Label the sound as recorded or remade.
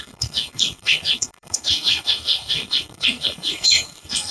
remade